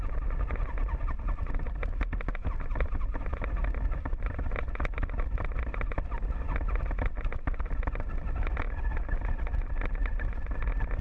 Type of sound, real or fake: real